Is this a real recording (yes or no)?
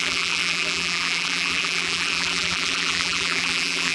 no